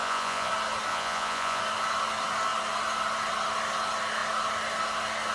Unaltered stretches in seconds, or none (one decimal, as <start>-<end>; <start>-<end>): 0.5-0.9; 1.6-5.3